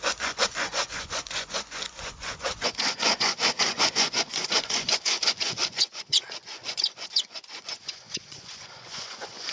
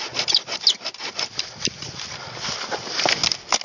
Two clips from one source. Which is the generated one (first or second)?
first